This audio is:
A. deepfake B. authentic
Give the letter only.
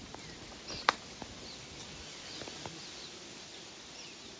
B